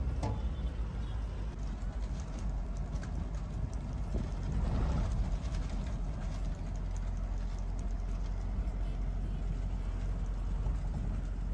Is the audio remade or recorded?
recorded